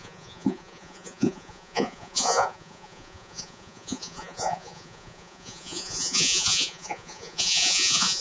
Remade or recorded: remade